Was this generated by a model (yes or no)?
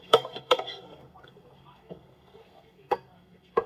yes